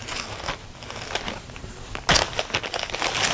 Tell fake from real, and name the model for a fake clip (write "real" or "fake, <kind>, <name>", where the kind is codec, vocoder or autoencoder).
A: real